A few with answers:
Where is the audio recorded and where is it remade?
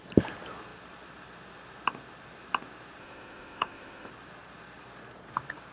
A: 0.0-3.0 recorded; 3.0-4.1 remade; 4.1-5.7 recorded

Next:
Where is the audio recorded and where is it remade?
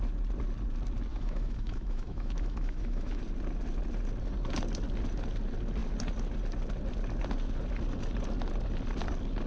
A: 0.0-1.1 recorded; 1.1-3.2 remade; 3.2-9.5 recorded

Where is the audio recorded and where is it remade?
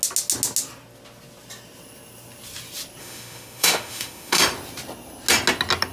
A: 0.0-3.0 recorded; 3.0-4.4 remade; 4.4-5.9 recorded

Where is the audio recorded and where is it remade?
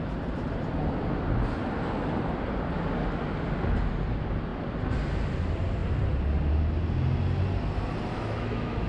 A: 0.0-8.1 recorded; 8.1-8.9 remade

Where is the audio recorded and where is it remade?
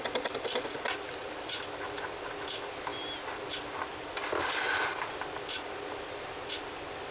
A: 0.0-7.1 recorded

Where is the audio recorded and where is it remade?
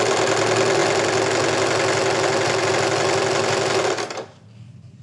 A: 0.0-5.0 recorded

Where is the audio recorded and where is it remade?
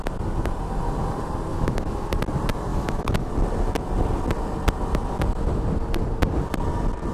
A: 0.0-1.5 recorded; 1.5-2.1 remade; 2.1-2.7 recorded; 2.7-3.3 remade; 3.3-7.1 recorded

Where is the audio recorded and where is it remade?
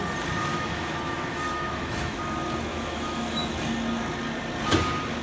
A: 0.0-0.5 recorded; 0.5-2.2 remade; 2.2-2.7 recorded; 2.7-3.5 remade; 3.5-5.2 recorded